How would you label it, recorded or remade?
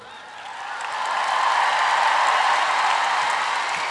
recorded